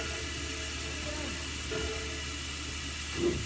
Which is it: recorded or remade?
recorded